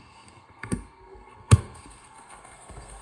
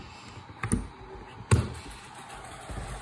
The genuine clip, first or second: second